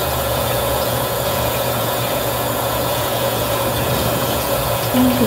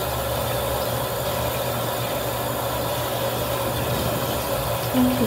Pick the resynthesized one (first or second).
first